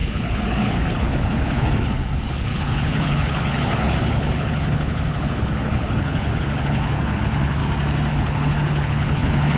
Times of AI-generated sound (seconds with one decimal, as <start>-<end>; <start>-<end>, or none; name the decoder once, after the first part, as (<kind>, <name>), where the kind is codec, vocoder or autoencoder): 0.0-7.6 (codec, HILCodec); 8.1-9.6